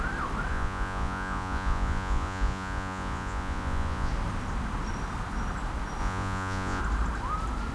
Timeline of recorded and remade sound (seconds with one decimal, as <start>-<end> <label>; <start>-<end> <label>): 0.0-0.5 recorded; 0.5-4.1 remade; 4.1-6.0 recorded; 6.0-6.8 remade; 6.8-7.7 recorded